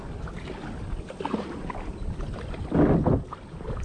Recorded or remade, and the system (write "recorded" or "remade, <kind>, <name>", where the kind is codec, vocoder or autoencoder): recorded